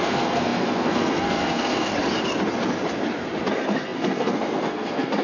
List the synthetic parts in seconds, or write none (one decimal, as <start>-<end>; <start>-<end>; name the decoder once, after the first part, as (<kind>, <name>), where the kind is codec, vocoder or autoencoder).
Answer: 0.0-1.9 (codec, SNAC); 3.5-5.2